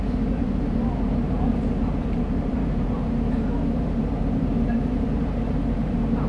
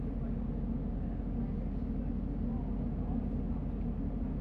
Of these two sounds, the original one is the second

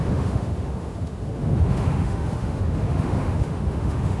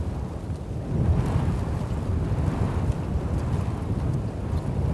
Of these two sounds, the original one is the second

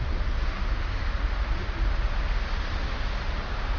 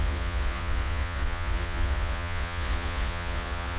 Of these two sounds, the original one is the first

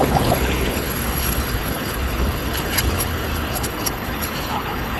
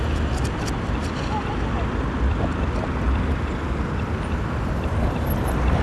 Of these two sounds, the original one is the second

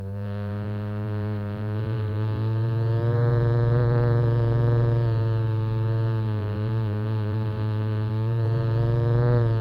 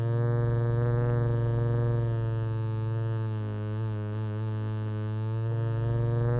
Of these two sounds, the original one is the second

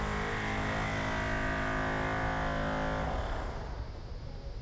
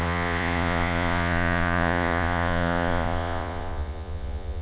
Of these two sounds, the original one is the first